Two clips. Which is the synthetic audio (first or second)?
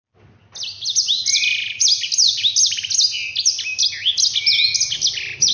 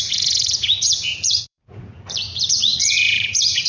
second